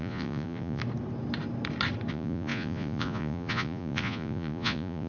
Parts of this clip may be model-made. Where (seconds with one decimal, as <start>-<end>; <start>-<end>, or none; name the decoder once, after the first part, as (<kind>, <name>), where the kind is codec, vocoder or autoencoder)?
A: 0.0-0.8 (vocoder, Vocos); 2.1-5.1